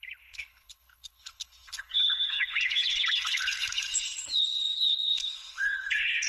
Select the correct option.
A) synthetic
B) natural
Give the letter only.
A